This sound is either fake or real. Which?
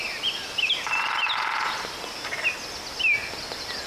real